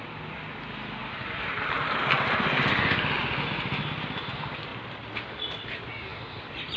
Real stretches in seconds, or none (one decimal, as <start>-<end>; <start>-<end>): 0.0-6.8